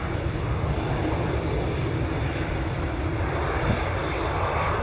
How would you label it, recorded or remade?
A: recorded